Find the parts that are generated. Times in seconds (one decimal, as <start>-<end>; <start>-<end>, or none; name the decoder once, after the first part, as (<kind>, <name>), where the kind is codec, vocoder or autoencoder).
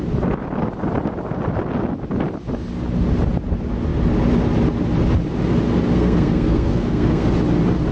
5.9-7.3 (codec, SNAC)